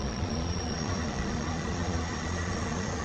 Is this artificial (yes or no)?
yes